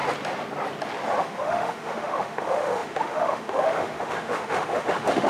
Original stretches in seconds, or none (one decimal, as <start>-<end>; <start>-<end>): 0.0-1.2